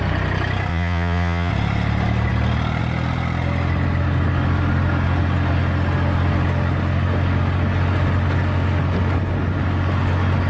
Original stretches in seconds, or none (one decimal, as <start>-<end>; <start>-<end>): 0.0-0.7; 1.5-10.5